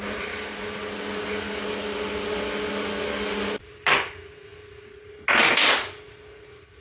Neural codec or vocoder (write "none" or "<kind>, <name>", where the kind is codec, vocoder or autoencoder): none